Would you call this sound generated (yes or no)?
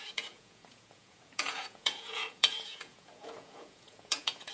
yes